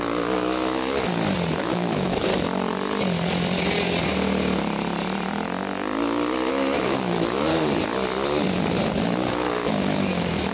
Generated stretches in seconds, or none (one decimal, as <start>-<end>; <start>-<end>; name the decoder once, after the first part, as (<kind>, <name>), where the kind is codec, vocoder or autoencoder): 0.0-1.1 (autoencoder, DAC-VAE); 1.6-2.3; 6.5-7.5; 9.0-10.5